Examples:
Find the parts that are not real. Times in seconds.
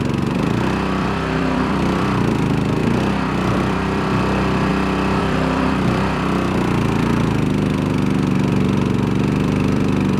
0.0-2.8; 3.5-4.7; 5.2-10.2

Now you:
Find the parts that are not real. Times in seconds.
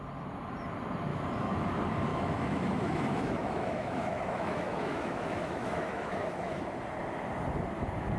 1.1-1.7; 2.1-6.6